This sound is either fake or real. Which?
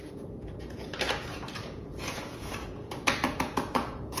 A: fake